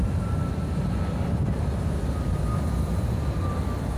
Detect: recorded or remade recorded